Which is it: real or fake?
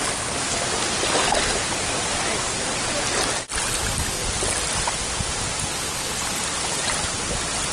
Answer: real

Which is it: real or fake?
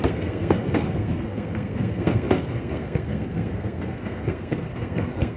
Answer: fake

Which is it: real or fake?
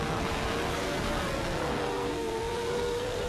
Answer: fake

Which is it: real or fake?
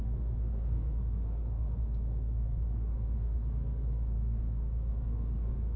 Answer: fake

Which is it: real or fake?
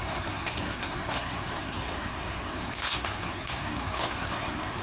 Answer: fake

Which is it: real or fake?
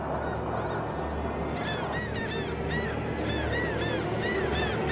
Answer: real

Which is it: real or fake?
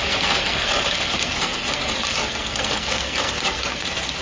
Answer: fake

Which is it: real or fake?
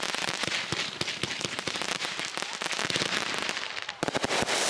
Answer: real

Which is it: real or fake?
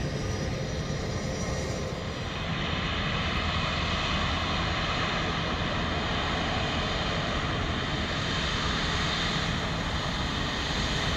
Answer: real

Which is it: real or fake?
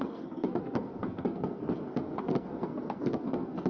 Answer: fake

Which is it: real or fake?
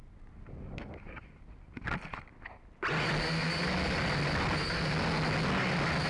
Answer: real